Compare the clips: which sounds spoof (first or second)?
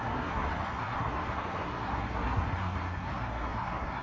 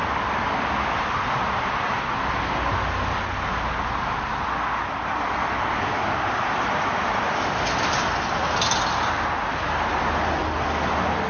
first